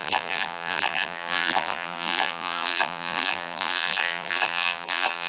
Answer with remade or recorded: remade